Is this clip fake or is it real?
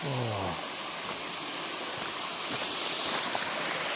real